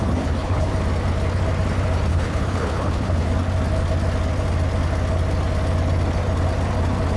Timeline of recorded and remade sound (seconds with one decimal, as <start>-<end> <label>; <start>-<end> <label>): 0.0-0.7 remade; 0.7-2.1 recorded; 2.1-3.3 remade; 3.3-7.2 recorded